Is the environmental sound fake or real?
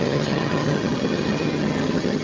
fake